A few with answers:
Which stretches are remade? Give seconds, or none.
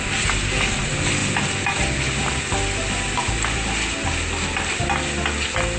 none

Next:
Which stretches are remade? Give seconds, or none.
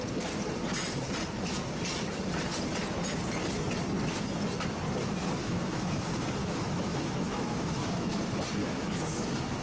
5.4-6.0; 6.4-8.2; 8.6-9.2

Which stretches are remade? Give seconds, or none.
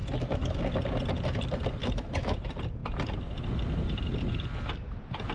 0.0-0.6; 1.8-2.4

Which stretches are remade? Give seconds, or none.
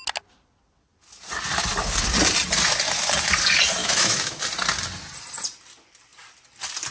3.8-4.4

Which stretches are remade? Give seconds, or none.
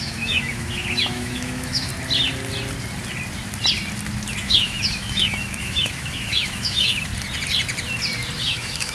0.0-1.9; 4.4-7.1; 8.4-8.9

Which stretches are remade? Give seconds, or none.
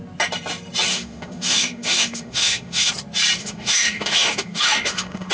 0.9-2.9; 3.4-5.3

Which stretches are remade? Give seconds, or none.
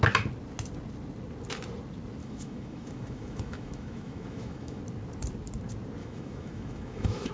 2.2-4.8; 6.0-7.3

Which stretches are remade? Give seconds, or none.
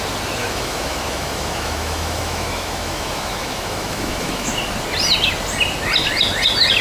0.4-4.5